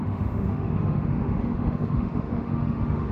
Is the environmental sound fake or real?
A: fake